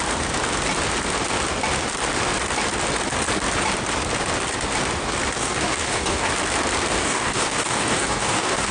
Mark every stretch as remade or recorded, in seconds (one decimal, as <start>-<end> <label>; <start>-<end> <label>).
0.0-5.4 recorded; 5.4-6.3 remade; 6.3-7.0 recorded; 7.0-8.7 remade